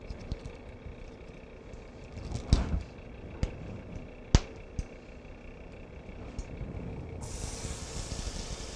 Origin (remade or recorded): recorded